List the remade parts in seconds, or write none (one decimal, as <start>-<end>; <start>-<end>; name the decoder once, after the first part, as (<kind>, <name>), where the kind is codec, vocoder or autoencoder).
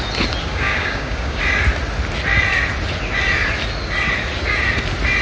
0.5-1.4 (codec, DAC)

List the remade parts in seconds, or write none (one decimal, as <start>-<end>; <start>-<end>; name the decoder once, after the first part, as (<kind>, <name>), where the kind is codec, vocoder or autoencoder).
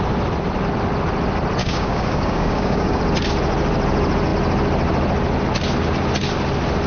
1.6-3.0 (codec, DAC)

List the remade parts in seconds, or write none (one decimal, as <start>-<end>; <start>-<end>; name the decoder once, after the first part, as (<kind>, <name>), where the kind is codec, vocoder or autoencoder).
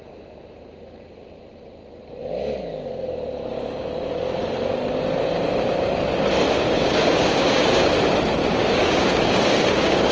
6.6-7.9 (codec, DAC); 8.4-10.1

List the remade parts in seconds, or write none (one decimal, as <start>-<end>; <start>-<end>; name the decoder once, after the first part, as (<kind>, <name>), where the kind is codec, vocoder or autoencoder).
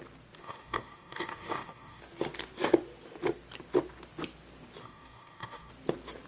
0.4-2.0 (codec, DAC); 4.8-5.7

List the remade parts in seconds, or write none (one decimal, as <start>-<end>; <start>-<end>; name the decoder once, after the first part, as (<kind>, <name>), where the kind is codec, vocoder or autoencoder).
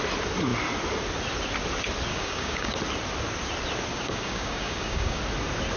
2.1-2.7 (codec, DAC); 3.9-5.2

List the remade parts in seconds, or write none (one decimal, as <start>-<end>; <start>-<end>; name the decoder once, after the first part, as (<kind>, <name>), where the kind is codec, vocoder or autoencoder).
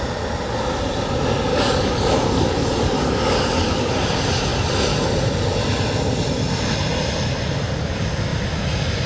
1.5-3.9 (codec, DAC)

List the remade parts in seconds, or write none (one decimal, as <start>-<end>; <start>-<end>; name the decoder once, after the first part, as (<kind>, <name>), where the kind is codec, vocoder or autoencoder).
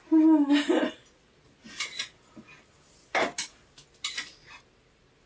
none